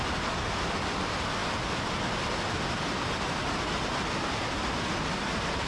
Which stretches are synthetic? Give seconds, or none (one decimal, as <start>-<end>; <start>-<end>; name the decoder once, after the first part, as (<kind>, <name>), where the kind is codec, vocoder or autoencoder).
none